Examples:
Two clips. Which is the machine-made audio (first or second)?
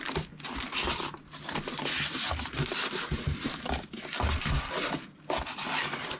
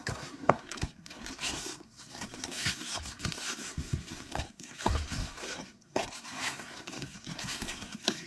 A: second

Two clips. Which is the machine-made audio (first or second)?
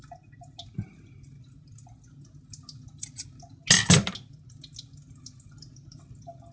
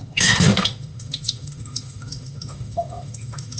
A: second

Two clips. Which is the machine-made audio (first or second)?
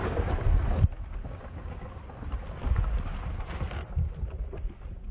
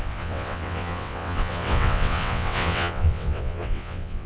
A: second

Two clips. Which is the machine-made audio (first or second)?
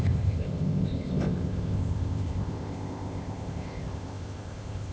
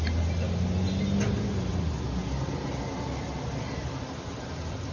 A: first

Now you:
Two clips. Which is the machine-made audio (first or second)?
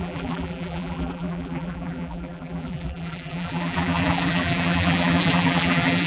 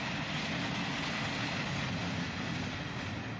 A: first